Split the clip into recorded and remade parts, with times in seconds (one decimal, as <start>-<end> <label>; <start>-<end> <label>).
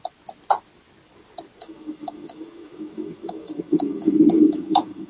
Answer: 0.0-1.6 recorded; 1.6-5.1 remade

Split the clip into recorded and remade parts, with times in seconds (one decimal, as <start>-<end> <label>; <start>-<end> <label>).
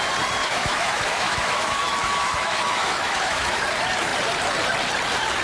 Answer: 0.0-0.4 recorded; 0.4-3.6 remade; 3.6-5.4 recorded